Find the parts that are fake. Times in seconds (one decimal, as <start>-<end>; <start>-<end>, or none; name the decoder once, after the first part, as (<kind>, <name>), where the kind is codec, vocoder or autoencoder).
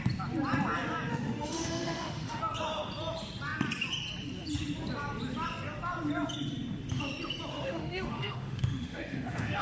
1.1-2.4 (autoencoder, DAC-VAE); 7.5-9.6